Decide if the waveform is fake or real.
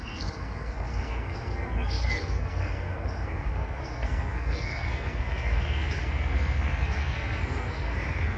fake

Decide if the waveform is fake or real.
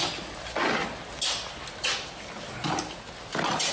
real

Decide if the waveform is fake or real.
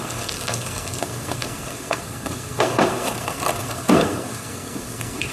fake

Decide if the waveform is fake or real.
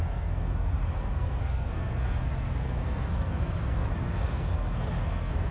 fake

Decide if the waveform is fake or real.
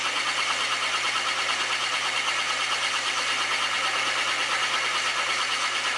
real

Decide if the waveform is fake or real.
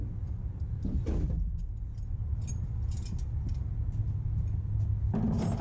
real